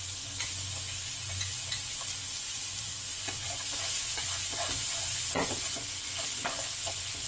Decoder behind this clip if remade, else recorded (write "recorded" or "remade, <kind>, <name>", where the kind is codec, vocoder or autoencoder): remade, vocoder, Vocos